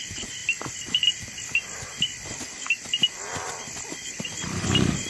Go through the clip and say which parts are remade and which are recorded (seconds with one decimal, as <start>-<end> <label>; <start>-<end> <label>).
0.0-5.1 remade